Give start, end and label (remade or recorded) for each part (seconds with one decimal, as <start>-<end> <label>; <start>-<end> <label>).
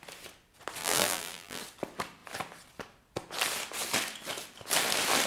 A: 0.0-0.8 recorded; 0.8-1.6 remade; 1.6-5.3 recorded